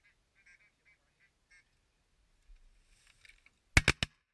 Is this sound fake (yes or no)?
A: no